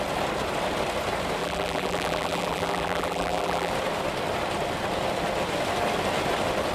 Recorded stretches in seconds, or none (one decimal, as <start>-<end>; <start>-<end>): 0.0-1.4; 3.7-6.7